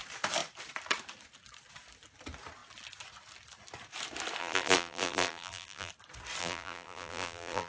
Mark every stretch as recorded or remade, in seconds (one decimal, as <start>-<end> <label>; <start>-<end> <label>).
0.0-4.4 recorded; 4.4-5.9 remade; 5.9-6.4 recorded; 6.4-7.7 remade